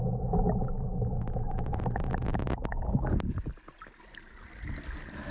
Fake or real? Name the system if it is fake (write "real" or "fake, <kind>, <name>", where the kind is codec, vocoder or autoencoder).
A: real